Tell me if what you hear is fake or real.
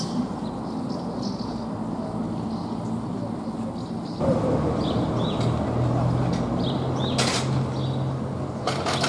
real